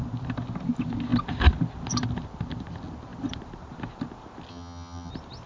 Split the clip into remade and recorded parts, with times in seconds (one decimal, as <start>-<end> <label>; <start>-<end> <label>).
0.0-4.5 recorded; 4.5-5.1 remade; 5.1-5.5 recorded